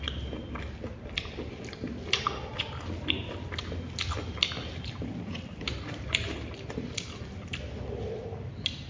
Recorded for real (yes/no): yes